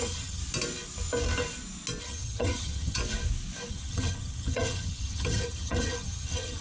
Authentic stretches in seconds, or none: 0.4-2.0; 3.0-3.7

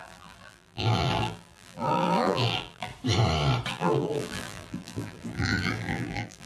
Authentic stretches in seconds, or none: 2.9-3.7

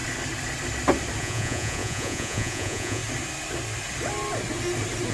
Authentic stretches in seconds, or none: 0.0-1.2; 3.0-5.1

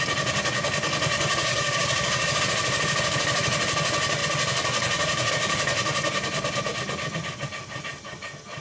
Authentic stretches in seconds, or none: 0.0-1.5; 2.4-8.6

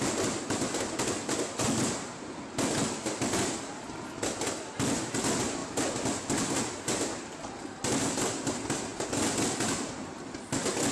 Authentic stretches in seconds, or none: 0.0-10.9

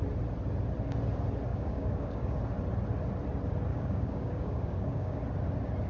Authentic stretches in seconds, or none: 0.0-1.5; 2.4-3.7; 5.2-5.9

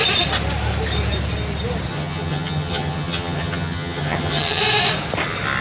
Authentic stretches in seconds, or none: 0.0-1.9; 4.6-5.6